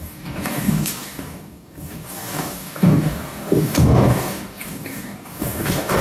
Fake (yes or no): yes